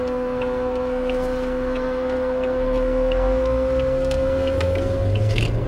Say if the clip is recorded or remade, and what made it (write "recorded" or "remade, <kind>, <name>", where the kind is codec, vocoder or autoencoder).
remade, codec, SNAC